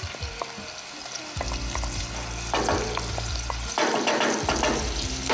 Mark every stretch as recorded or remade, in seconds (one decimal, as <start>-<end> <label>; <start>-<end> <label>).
0.0-5.3 recorded